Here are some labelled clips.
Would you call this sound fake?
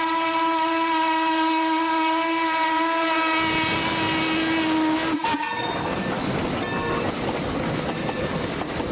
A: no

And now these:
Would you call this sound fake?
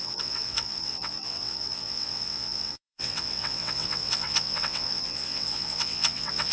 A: yes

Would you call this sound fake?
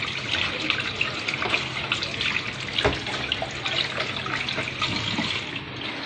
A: no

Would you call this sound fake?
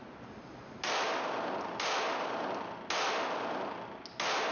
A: no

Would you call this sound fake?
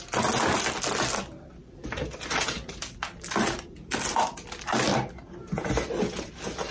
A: no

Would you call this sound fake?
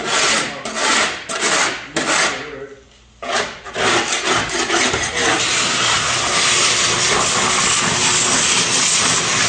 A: no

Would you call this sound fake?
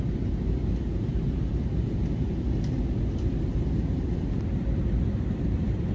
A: no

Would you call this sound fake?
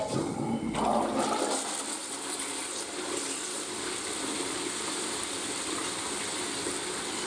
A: no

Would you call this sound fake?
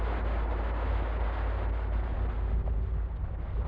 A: no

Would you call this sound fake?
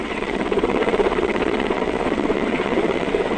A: yes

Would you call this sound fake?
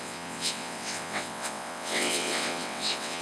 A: yes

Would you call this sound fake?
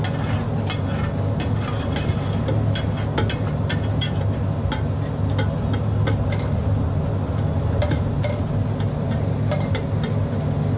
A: no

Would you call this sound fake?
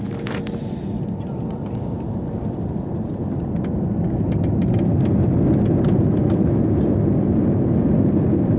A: no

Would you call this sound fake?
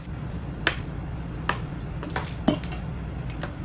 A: no